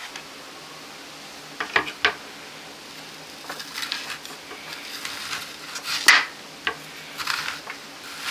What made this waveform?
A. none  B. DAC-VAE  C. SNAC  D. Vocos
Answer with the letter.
A